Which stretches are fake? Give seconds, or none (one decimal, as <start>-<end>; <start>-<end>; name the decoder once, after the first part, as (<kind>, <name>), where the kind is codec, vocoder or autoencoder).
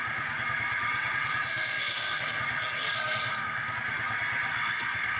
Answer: 1.5-2.4 (codec, SNAC); 2.8-3.7; 4.5-5.2